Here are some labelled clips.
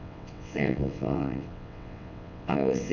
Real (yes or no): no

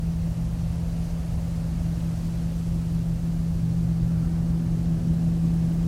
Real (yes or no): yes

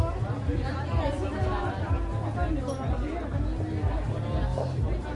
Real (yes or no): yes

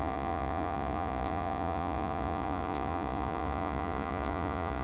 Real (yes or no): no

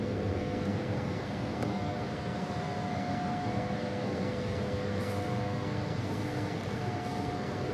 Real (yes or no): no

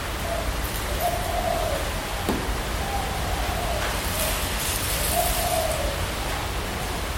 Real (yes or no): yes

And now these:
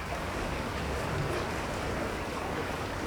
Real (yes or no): no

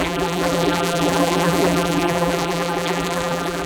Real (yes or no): no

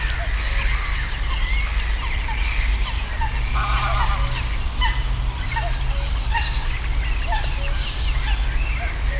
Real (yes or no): yes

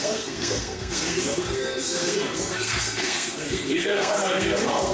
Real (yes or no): no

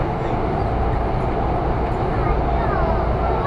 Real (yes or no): yes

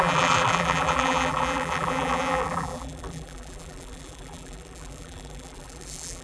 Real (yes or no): no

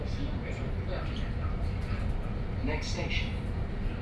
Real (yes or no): yes